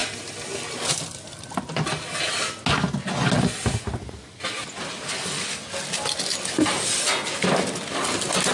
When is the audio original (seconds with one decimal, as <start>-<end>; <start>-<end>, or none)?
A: 0.0-8.5